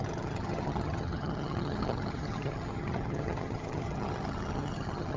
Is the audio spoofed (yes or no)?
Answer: yes